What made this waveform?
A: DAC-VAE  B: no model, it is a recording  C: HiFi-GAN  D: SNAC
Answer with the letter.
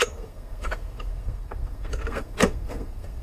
D